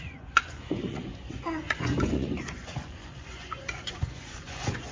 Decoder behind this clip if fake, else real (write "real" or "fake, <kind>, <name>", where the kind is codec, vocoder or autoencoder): fake, vocoder, Vocos